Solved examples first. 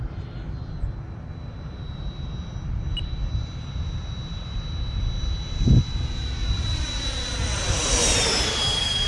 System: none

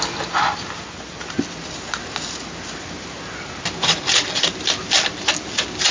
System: none